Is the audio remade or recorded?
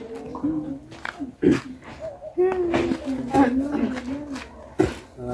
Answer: recorded